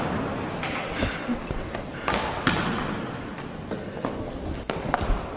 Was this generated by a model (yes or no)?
no